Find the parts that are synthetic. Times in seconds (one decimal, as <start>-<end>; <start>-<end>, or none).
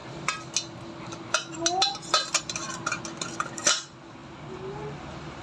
none